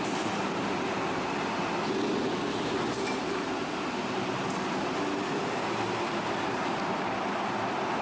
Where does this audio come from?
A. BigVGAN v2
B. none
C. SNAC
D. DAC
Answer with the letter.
B